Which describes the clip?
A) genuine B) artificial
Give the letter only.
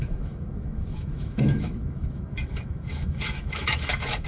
B